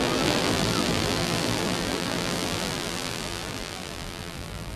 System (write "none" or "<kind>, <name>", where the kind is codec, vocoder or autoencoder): vocoder, BigVGAN v2